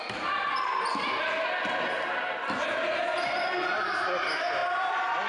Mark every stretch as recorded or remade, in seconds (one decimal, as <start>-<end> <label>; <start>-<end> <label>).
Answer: 0.0-5.3 recorded